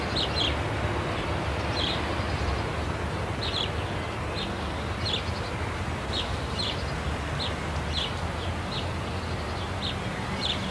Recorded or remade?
recorded